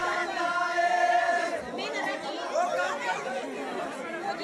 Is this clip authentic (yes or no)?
yes